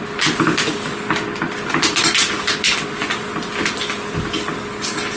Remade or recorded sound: recorded